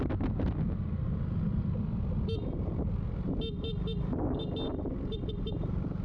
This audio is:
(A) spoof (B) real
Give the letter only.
B